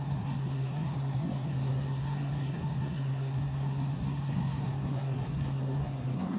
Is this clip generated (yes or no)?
yes